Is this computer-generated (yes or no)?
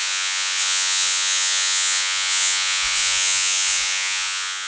yes